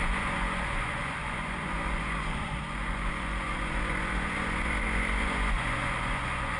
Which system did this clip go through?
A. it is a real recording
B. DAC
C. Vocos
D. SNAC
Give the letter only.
C